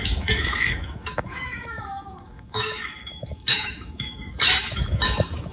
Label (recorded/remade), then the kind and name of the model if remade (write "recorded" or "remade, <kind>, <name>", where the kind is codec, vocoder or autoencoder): remade, autoencoder, DAC-VAE